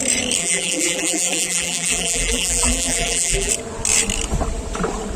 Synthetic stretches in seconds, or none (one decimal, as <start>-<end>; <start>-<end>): 0.4-3.5